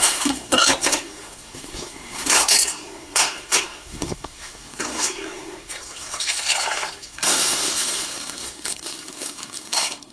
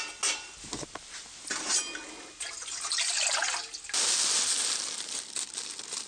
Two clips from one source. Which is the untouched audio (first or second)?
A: second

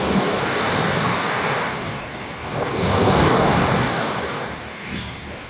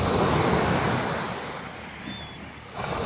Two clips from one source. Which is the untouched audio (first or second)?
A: second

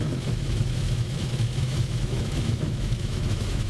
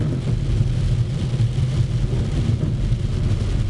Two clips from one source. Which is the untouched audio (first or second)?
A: second